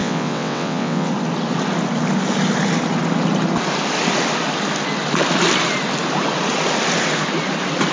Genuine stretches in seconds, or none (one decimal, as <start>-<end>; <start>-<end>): 1.1-7.9